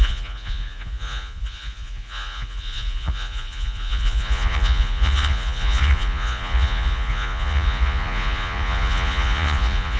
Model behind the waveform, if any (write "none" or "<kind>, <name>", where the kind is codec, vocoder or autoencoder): vocoder, Vocos